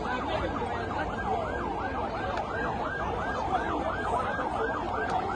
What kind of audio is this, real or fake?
real